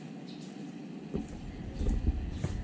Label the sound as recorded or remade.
recorded